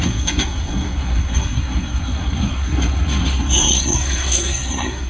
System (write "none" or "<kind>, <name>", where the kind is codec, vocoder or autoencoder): codec, SNAC